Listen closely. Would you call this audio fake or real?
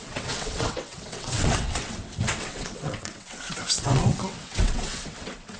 fake